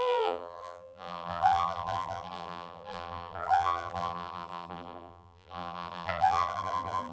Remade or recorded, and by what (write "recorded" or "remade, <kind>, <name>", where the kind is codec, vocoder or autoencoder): remade, vocoder, BigVGAN v2